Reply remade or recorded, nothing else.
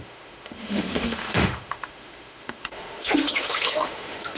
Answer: remade